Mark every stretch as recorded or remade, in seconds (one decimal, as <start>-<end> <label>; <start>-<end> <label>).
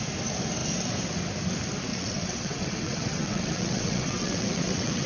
0.0-1.9 recorded; 1.9-5.1 remade